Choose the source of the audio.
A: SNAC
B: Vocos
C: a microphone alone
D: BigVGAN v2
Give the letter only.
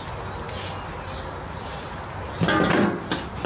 C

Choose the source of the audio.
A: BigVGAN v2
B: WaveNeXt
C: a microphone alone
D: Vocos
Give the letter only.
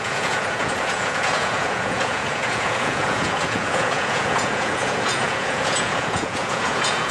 D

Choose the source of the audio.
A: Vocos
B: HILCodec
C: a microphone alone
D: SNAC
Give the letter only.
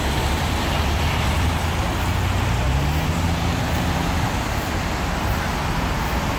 C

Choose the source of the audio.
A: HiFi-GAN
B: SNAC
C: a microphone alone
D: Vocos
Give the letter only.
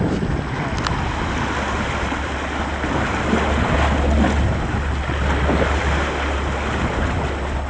C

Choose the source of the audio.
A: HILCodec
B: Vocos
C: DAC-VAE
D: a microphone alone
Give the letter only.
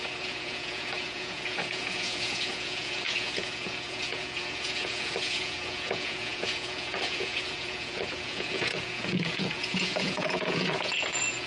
B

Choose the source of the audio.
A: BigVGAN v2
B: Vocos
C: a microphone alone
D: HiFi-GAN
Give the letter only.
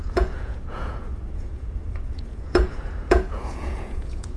B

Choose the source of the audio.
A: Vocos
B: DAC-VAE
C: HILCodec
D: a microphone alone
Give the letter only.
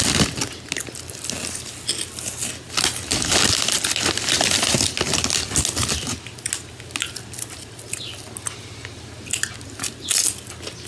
D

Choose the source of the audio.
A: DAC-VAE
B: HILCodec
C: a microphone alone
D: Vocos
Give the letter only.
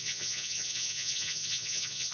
D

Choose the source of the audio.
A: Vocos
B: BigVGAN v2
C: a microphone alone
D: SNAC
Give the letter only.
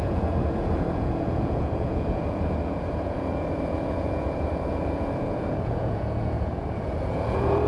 A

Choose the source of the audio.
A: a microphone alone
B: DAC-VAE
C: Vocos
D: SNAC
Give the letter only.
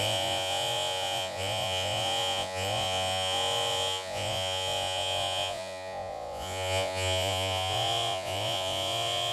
C